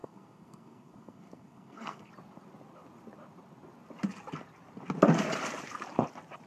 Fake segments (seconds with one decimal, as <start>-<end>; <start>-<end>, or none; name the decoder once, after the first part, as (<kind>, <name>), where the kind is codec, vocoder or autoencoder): 0.0-2.1 (codec, SNAC)